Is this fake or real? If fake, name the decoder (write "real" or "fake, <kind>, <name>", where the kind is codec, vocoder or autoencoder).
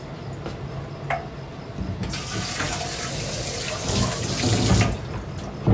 real